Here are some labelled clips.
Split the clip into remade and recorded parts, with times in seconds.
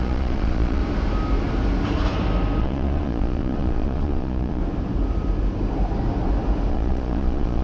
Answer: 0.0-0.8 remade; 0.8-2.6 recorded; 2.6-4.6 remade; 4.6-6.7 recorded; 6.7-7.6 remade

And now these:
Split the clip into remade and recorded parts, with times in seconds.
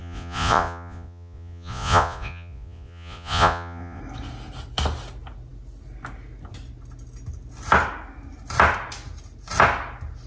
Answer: 0.0-4.0 remade; 4.0-10.3 recorded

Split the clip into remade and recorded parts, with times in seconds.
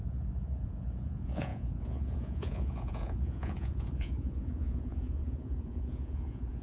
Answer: 0.0-6.6 remade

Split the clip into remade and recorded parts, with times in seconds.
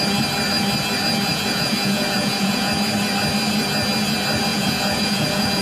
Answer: 0.0-1.3 recorded; 1.3-2.7 remade; 2.7-4.5 recorded; 4.5-5.6 remade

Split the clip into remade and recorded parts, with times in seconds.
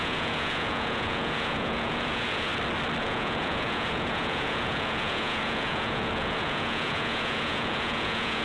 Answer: 0.0-2.5 remade; 2.5-3.0 recorded; 3.0-8.4 remade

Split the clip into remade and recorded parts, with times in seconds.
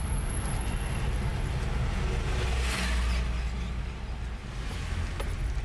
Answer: 0.0-5.6 recorded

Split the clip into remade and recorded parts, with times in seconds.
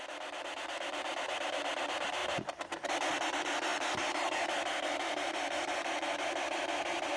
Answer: 0.0-7.2 recorded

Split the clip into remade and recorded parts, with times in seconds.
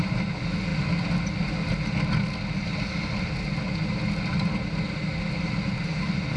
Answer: 0.0-6.4 recorded